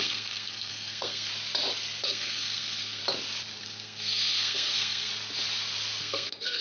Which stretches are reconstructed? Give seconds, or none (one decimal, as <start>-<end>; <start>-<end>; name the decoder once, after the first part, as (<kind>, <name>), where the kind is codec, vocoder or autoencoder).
0.0-1.3 (codec, SNAC); 2.0-3.0; 3.6-5.1; 6.0-6.6